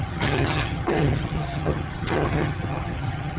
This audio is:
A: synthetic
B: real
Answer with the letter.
A